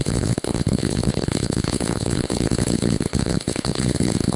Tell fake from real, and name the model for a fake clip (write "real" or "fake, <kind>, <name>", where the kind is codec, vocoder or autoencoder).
fake, codec, HILCodec